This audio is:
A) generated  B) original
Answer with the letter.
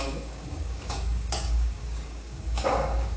A